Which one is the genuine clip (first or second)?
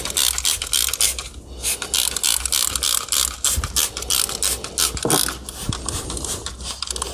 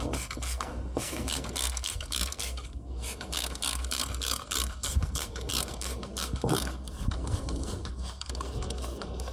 first